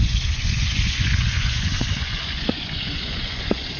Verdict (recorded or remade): remade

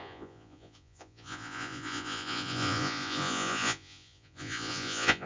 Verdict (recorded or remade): remade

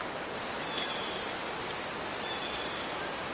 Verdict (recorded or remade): recorded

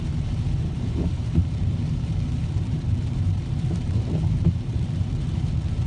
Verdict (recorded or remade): remade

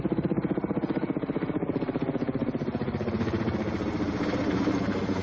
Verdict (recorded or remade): remade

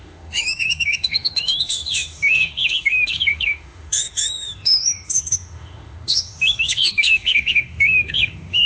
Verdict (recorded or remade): remade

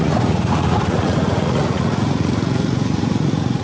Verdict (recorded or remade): remade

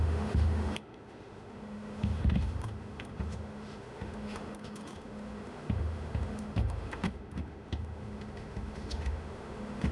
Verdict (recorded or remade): remade